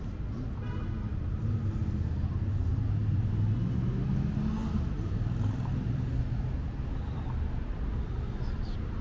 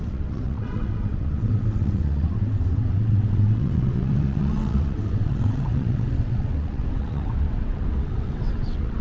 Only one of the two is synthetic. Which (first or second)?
second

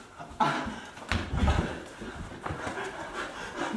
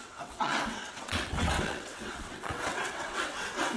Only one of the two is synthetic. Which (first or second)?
second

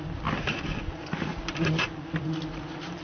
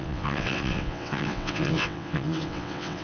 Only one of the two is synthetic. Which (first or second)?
second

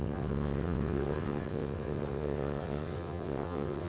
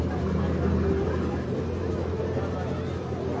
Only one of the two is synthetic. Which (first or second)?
first